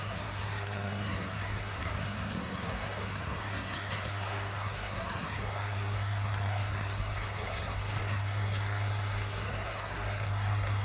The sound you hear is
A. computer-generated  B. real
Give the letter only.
A